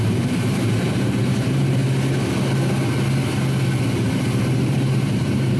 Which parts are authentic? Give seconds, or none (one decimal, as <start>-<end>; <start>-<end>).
1.8-4.1